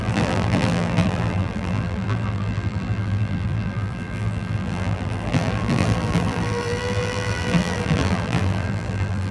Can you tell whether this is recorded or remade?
remade